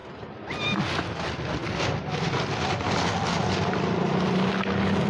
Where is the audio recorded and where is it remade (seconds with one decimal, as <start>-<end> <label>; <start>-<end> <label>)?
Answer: 0.0-0.8 remade; 0.8-1.6 recorded; 1.6-2.3 remade; 2.3-5.1 recorded